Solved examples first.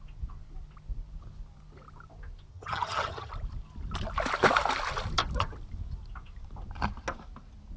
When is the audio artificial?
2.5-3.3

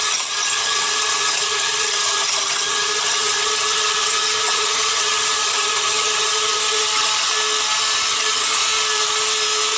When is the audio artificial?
0.0-7.3; 8.1-8.6

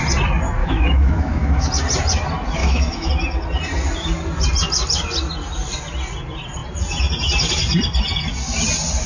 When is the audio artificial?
0.6-1.7; 2.6-3.1

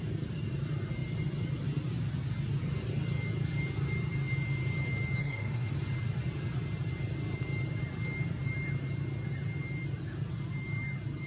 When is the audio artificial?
5.2-5.7